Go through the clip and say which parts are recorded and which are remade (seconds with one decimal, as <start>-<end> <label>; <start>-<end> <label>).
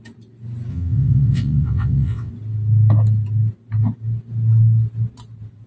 0.0-0.7 recorded; 0.7-2.3 remade; 2.3-5.7 recorded